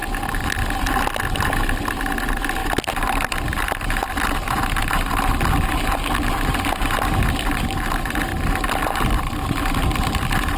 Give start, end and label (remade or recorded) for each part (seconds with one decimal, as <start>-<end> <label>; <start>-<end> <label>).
0.0-10.6 recorded